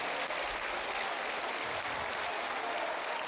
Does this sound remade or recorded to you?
recorded